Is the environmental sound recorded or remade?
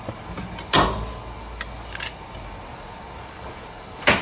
recorded